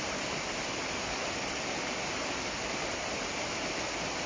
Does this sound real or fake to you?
real